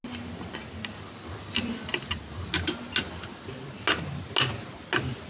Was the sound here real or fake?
real